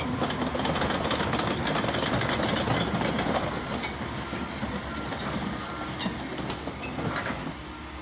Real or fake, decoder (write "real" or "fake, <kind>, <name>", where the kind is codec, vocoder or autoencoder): real